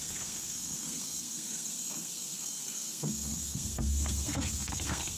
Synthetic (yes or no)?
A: yes